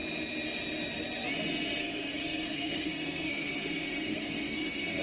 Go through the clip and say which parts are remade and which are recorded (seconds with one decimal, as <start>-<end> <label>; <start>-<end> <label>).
0.0-1.8 recorded; 1.8-5.0 remade